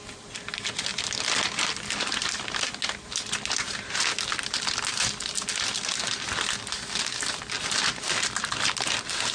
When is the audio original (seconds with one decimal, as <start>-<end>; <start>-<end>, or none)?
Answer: 0.0-9.3